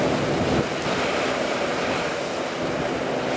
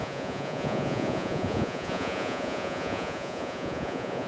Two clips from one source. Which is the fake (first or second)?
second